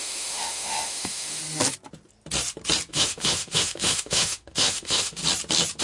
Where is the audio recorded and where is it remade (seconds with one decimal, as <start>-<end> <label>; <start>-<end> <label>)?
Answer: 0.0-1.4 remade; 1.4-2.9 recorded; 2.9-5.2 remade; 5.2-5.8 recorded